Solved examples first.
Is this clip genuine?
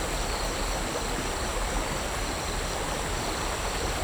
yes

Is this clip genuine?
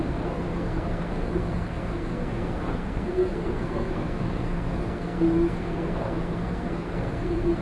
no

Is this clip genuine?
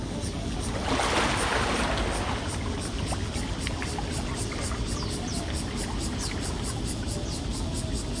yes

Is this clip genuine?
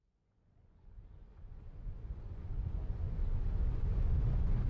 no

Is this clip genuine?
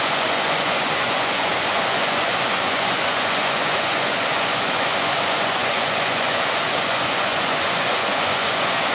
no